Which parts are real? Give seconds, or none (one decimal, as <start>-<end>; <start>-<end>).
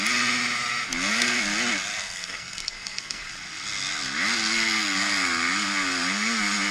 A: 0.0-2.0; 3.3-6.7